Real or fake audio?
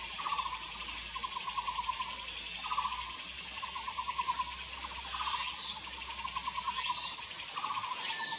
real